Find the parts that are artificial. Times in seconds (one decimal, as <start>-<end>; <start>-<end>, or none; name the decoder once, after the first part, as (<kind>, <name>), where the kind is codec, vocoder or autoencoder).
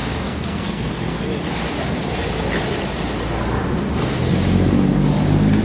0.0-1.2 (codec, SNAC)